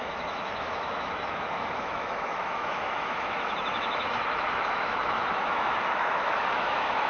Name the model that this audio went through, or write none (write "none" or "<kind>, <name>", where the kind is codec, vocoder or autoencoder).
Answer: autoencoder, DAC-VAE